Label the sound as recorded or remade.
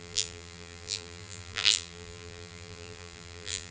remade